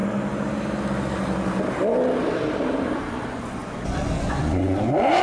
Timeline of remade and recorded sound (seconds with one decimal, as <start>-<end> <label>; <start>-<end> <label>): 0.0-3.1 recorded; 3.1-5.2 remade